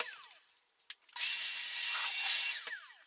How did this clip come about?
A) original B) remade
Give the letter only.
A